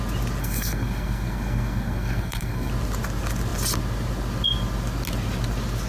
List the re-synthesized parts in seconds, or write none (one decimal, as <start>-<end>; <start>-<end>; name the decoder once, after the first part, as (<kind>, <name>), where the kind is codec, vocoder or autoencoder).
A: 0.4-2.7 (codec, SNAC)